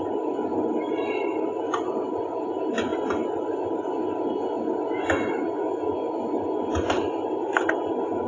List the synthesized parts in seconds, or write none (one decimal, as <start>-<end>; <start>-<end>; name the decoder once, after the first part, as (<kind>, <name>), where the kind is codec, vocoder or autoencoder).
none